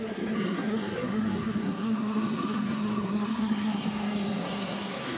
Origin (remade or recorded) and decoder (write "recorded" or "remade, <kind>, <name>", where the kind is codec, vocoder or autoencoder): remade, codec, SNAC